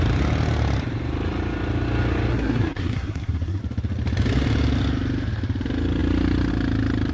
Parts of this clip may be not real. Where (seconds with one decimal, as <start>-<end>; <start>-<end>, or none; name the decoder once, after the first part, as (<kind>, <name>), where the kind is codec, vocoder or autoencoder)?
2.3-3.6 (codec, SNAC)